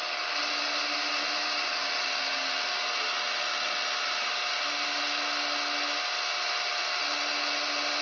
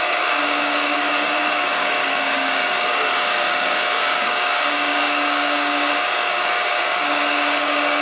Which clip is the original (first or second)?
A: first